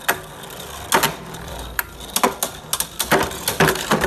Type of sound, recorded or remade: recorded